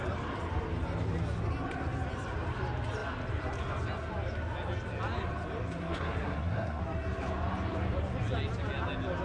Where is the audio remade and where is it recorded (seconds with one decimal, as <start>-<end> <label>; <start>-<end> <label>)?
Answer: 0.0-5.8 recorded; 5.8-6.8 remade; 6.8-9.2 recorded